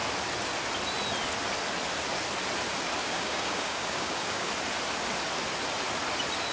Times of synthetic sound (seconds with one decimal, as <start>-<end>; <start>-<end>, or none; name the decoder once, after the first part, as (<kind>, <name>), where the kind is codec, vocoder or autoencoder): 3.0-4.5 (codec, DAC)

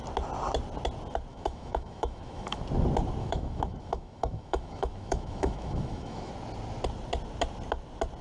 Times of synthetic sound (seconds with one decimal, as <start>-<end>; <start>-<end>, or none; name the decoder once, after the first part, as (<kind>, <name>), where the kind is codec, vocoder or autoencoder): 1.3-2.6 (autoencoder, DAC-VAE); 3.2-6.3

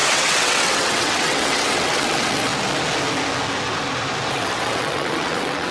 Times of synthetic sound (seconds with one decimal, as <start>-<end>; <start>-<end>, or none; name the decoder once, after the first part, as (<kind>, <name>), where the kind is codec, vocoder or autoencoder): 0.0-2.5 (vocoder, WaveNeXt); 4.3-5.7